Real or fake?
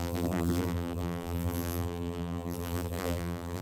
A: fake